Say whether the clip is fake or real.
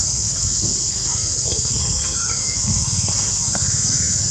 fake